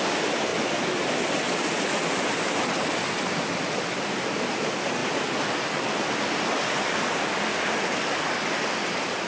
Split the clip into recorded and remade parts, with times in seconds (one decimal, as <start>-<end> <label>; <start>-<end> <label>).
0.0-9.3 recorded